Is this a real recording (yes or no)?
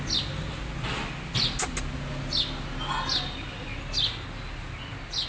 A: yes